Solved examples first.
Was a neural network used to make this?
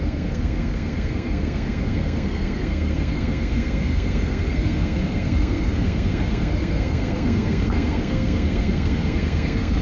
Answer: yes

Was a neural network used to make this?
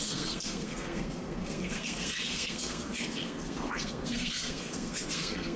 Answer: yes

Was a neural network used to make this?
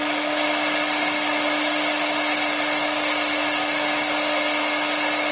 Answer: no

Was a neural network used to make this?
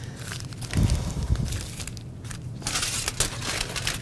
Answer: no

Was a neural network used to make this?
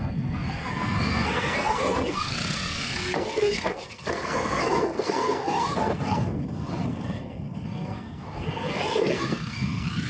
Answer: yes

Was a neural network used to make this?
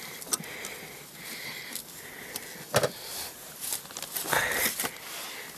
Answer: no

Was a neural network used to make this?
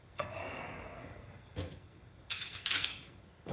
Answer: yes